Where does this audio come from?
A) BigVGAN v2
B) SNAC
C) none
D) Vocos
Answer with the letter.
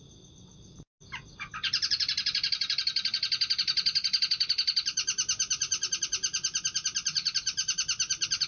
C